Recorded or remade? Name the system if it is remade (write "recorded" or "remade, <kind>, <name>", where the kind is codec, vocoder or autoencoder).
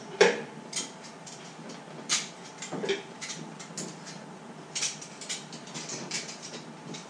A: remade, vocoder, BigVGAN v2